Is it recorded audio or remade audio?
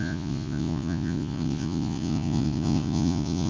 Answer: remade